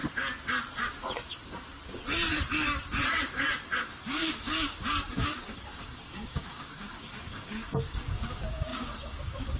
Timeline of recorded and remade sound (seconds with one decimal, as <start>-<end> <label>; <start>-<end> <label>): 0.0-3.8 recorded; 3.8-9.6 remade